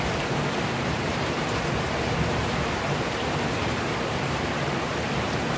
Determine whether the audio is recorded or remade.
remade